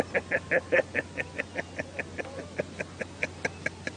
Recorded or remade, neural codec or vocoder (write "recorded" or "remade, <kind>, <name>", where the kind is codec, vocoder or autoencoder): recorded